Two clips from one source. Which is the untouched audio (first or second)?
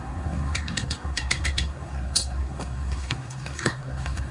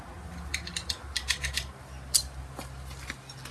second